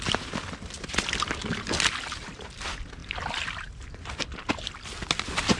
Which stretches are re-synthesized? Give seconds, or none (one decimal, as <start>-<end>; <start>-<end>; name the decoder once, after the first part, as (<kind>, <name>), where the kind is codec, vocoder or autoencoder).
none